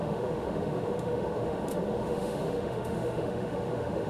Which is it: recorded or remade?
remade